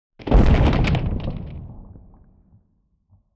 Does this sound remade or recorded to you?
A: recorded